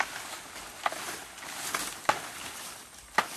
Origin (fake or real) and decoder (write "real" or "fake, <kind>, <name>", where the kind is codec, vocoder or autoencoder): real